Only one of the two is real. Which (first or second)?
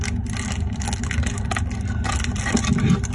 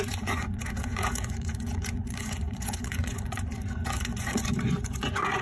first